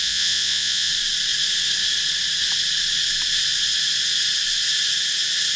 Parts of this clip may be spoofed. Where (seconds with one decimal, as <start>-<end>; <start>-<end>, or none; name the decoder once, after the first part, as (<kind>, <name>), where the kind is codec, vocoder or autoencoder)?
0.0-0.9 (vocoder, Vocos)